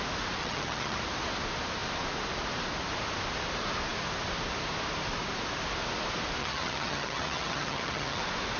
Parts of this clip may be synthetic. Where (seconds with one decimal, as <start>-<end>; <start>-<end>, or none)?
0.4-1.0; 6.4-8.2